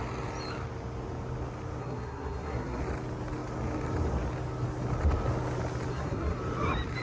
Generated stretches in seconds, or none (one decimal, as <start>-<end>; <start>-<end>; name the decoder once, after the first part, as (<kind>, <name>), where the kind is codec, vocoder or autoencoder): 1.8-2.8 (codec, SNAC); 5.9-6.4